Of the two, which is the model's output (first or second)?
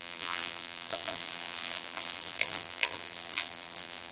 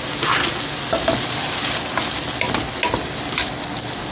first